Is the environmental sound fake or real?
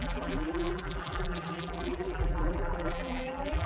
fake